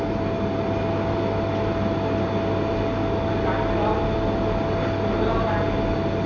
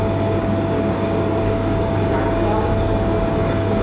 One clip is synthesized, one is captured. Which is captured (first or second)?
first